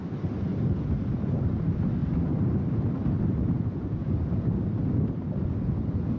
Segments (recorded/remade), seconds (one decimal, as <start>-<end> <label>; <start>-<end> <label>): 0.0-2.0 recorded; 2.0-4.8 remade; 4.8-6.2 recorded